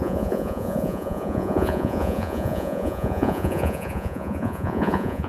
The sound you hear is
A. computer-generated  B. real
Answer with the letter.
A